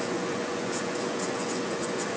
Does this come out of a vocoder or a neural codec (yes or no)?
yes